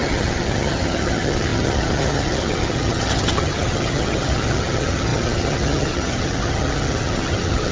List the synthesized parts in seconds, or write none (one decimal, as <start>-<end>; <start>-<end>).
0.0-7.7